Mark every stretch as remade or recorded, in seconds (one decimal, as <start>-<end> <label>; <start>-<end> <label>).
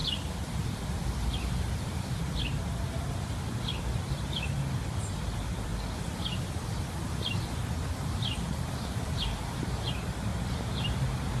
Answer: 0.0-5.7 remade; 5.7-7.4 recorded; 7.4-11.4 remade